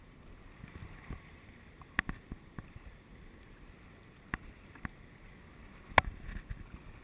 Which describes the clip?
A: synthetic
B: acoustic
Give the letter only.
B